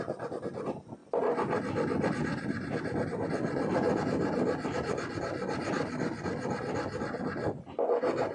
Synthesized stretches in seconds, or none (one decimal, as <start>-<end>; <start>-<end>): none